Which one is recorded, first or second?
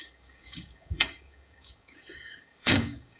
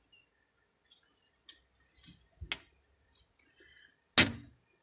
second